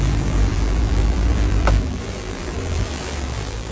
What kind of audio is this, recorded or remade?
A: remade